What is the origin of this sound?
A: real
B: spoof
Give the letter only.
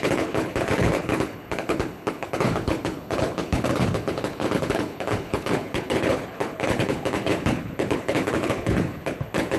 B